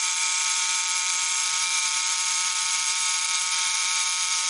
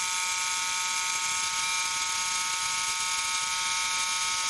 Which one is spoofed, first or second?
first